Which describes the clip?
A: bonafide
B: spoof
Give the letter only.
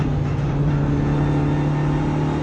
A